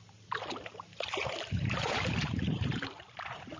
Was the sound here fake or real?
fake